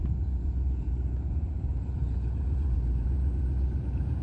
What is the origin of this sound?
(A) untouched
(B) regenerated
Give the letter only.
B